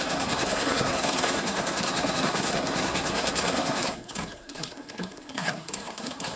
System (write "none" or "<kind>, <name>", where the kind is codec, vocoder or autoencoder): codec, SNAC